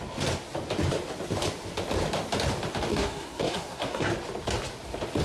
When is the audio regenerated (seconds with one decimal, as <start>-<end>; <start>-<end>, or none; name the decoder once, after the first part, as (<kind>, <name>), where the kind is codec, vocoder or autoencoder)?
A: 2.9-4.1 (codec, SNAC)